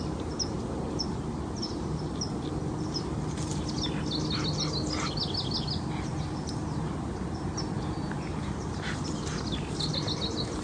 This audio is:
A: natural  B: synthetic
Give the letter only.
A